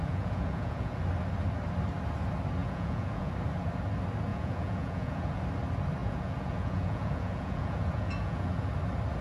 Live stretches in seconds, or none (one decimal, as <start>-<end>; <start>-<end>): 1.0-2.6; 3.3-4.3; 5.4-6.0; 8.7-9.2